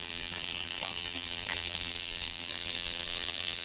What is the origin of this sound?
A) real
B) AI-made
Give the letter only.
B